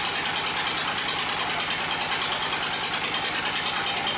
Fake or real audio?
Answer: real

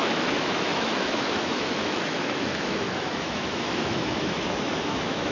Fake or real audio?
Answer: fake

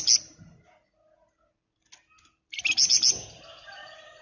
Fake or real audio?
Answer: real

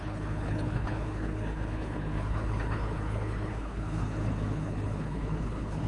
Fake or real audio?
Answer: fake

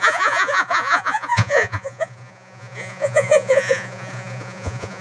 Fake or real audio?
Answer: fake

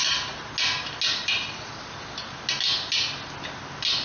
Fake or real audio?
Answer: real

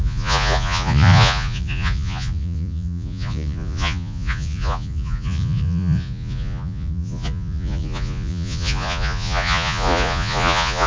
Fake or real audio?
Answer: fake